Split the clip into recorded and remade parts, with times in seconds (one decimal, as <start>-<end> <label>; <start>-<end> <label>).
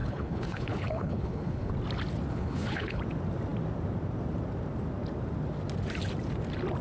0.0-1.7 remade; 1.7-2.3 recorded; 2.3-3.0 remade; 3.0-6.8 recorded